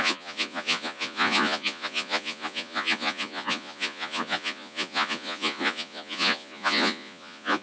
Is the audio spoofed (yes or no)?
yes